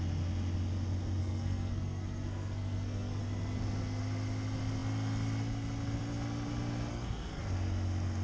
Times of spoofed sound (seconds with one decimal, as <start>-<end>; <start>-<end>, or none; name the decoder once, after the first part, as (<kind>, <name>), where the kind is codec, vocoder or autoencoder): 1.2-3.2 (codec, SNAC); 6.9-7.4